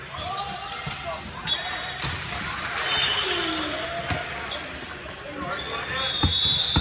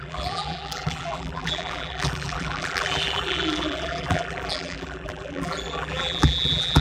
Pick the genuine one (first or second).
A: first